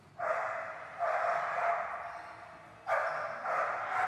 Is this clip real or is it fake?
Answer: real